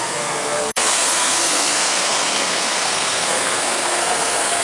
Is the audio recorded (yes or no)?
no